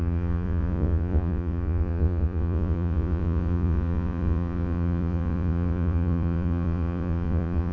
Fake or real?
fake